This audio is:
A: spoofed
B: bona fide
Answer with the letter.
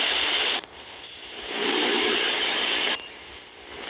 A